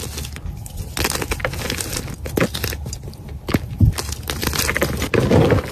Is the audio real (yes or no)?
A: yes